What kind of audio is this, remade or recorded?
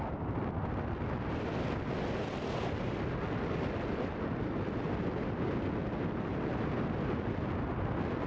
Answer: recorded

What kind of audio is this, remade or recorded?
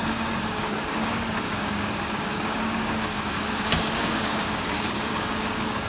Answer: remade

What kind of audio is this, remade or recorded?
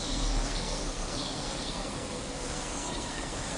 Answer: remade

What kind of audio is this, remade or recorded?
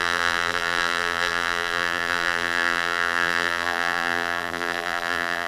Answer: remade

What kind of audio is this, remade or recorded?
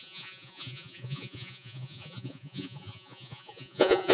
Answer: remade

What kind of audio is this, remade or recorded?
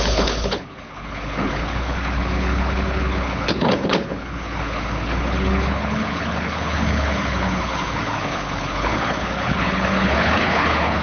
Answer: remade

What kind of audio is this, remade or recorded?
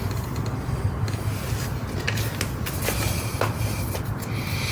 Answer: recorded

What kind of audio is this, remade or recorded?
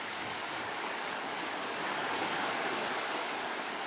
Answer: remade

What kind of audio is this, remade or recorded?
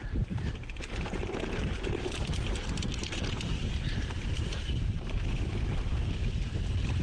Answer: remade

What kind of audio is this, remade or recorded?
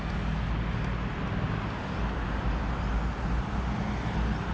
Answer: recorded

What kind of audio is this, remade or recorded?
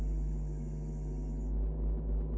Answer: recorded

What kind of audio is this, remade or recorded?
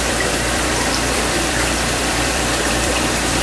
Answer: remade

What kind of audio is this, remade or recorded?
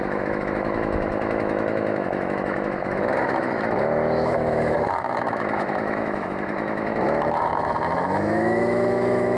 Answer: remade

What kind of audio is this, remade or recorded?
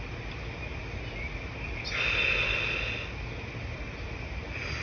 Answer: recorded